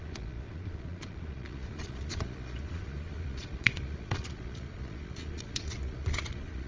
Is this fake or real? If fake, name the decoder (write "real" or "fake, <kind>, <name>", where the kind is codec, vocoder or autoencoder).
fake, vocoder, Vocos